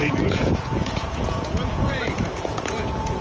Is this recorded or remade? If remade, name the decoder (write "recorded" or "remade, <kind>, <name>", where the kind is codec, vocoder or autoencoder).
remade, vocoder, Vocos